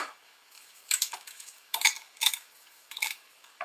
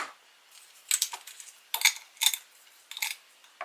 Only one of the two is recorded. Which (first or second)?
second